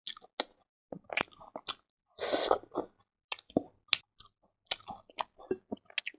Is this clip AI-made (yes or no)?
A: no